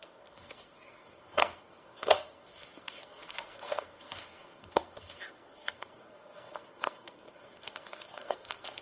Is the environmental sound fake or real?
fake